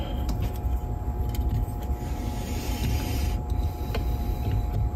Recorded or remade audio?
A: remade